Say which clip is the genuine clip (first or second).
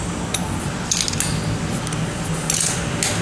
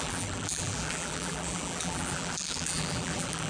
first